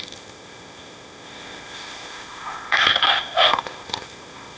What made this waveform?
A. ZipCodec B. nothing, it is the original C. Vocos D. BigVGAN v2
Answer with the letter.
A